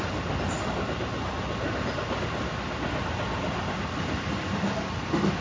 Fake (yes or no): no